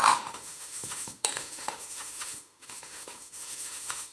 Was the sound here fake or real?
fake